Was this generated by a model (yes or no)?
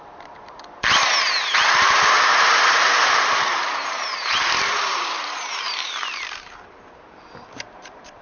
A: yes